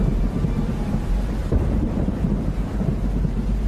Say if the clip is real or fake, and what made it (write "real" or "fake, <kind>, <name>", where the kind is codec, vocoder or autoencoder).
real